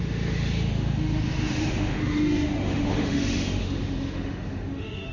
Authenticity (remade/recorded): remade